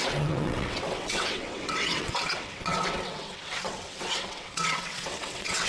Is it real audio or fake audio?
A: fake